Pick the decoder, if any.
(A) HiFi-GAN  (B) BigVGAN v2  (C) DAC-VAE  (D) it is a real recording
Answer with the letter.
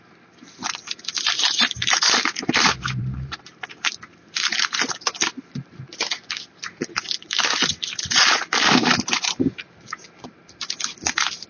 B